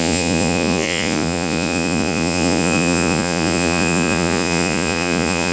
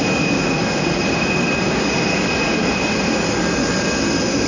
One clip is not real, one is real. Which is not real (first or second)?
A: first